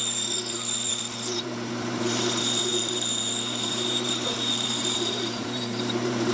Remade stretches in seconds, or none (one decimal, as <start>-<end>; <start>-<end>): 0.9-6.3